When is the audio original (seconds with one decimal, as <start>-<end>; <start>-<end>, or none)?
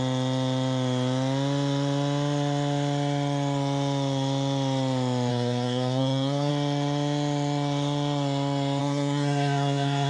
0.0-5.3; 6.5-8.8